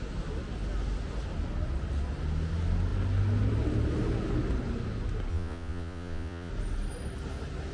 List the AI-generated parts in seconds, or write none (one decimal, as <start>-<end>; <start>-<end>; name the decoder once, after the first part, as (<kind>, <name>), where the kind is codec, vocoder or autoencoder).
5.3-6.5 (vocoder, Vocos)